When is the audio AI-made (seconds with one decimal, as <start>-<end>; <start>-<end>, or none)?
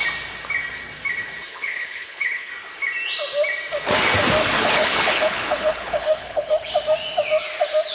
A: 1.5-2.5; 4.4-6.7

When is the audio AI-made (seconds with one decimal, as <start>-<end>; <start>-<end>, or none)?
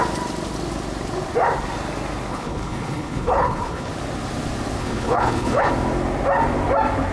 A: 2.3-3.9; 4.8-5.7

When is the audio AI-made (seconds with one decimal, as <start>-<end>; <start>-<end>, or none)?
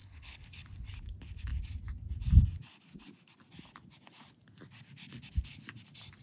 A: 0.0-0.9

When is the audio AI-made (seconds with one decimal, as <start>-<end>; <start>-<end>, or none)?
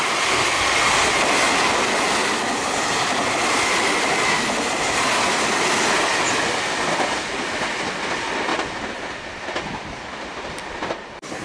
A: none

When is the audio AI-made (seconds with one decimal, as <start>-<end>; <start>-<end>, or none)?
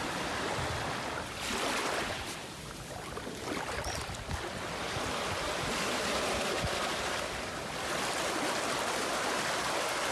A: none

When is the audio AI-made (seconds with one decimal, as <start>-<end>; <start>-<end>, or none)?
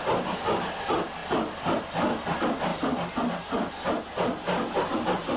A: none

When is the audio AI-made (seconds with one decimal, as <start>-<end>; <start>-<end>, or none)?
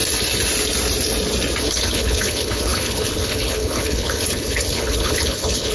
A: 1.6-5.7